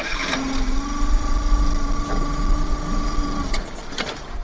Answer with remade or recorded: recorded